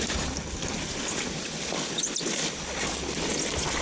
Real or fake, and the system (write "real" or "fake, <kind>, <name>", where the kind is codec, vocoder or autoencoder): real